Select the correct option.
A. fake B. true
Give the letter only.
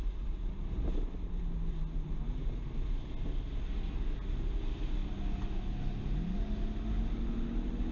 B